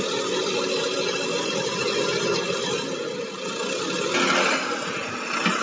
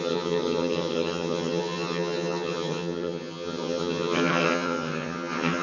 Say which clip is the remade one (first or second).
second